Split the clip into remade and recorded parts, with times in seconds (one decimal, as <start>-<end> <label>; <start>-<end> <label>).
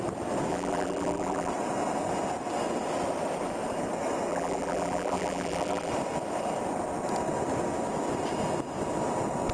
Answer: 0.0-0.5 recorded; 0.5-1.5 remade; 1.5-4.3 recorded; 4.3-5.9 remade; 5.9-9.5 recorded